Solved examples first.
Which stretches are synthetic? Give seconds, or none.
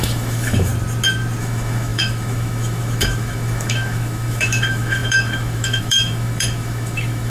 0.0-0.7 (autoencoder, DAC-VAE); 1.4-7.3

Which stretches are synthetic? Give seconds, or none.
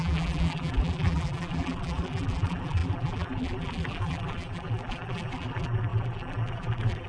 0.0-7.1 (vocoder, BigVGAN v2)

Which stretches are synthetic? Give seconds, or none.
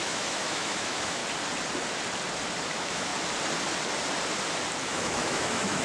0.0-1.2 (autoencoder, DAC-VAE); 2.7-3.1; 4.8-5.8